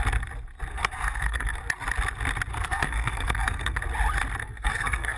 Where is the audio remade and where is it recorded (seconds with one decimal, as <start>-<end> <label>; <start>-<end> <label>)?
0.0-0.7 recorded; 0.7-1.6 remade; 1.6-2.5 recorded; 2.5-3.8 remade; 3.8-4.4 recorded; 4.4-5.2 remade